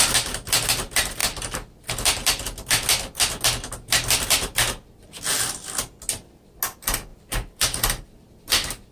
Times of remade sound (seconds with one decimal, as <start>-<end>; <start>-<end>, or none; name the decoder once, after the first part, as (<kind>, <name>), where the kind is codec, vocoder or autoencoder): 7.1-8.1 (vocoder, BigVGAN v2)